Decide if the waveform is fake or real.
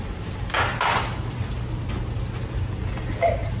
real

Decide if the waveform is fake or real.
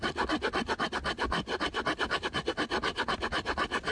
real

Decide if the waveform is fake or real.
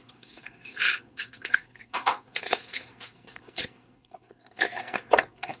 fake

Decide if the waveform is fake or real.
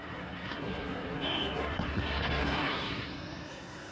fake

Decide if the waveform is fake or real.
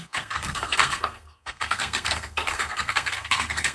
fake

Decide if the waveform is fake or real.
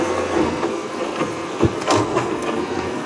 fake